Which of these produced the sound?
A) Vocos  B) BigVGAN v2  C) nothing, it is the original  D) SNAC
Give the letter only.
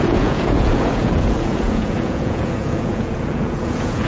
A